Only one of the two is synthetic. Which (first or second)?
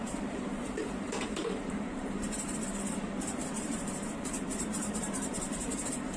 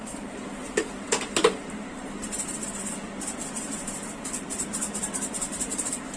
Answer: first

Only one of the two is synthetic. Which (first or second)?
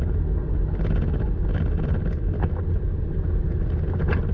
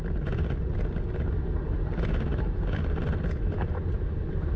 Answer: second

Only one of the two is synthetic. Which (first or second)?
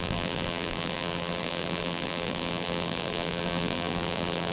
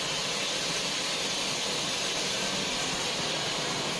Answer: first